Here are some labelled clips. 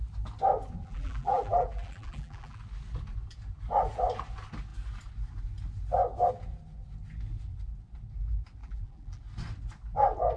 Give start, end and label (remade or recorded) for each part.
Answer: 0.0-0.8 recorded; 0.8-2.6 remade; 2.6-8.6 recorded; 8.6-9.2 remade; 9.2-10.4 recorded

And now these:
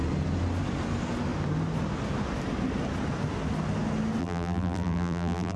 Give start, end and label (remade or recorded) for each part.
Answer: 0.0-4.2 recorded; 4.2-5.6 remade

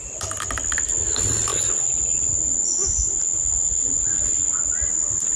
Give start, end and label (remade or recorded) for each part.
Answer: 0.0-1.5 recorded; 1.5-4.7 remade; 4.7-5.4 recorded

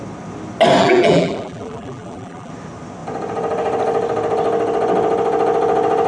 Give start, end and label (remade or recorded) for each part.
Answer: 0.0-0.8 recorded; 0.8-2.5 remade; 2.5-6.1 recorded

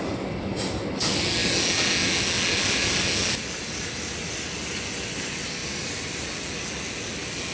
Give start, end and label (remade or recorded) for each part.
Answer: 0.0-5.6 recorded; 5.6-6.2 remade; 6.2-7.5 recorded

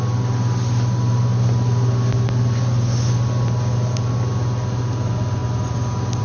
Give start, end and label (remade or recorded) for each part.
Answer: 0.0-6.2 remade